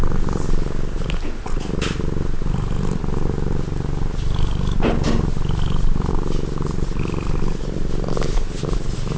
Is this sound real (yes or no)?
yes